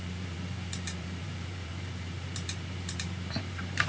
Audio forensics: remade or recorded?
remade